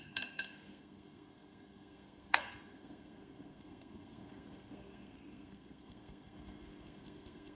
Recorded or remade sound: remade